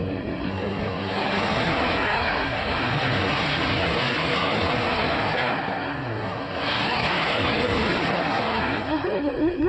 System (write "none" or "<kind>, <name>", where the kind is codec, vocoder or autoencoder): codec, SNAC